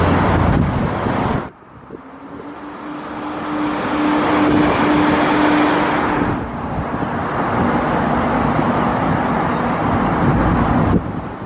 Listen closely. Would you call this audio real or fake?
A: real